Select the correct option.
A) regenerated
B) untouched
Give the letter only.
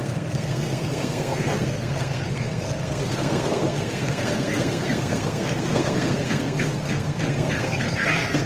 A